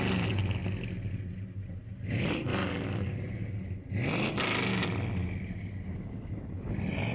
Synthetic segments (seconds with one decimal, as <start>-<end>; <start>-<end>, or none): none